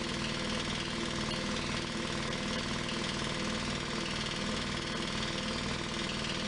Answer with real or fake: real